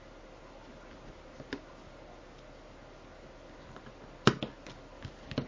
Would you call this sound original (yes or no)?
yes